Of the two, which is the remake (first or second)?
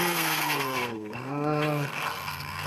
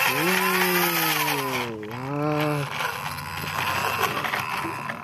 first